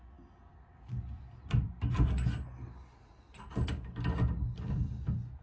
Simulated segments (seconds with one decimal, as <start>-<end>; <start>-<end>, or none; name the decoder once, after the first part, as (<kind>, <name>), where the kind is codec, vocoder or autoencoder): none

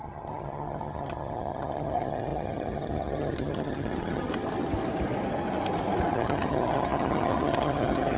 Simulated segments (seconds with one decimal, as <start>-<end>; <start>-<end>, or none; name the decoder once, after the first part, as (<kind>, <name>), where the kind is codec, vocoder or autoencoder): 0.0-4.3 (vocoder, HiFi-GAN); 6.1-8.2

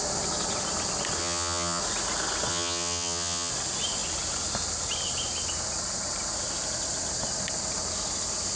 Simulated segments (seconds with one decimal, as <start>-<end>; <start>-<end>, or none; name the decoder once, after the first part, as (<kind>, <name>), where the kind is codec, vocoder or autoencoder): 1.2-1.8 (vocoder, HiFi-GAN); 2.5-3.5

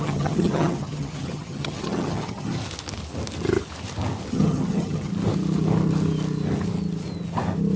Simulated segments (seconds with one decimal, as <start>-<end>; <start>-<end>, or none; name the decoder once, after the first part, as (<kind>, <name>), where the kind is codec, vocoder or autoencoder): 0.0-2.6 (vocoder, HiFi-GAN); 4.3-5.1

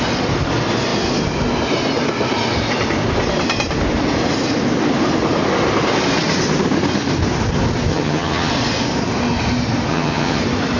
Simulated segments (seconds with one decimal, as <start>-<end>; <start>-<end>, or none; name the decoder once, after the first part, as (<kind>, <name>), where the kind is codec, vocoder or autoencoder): 7.9-8.5 (vocoder, HiFi-GAN); 9.9-10.4

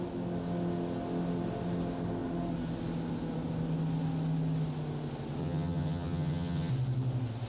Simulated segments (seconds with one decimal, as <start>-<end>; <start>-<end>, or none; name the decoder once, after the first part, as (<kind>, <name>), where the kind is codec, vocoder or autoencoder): 5.4-6.7 (vocoder, HiFi-GAN)

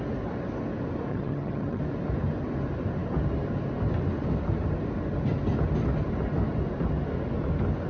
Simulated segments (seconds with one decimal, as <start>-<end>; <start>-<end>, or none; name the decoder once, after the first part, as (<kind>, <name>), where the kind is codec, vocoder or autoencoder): 1.1-1.8 (vocoder, HiFi-GAN)